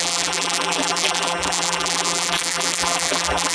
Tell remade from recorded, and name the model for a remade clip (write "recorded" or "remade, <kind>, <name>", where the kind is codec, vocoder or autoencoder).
remade, vocoder, BigVGAN v2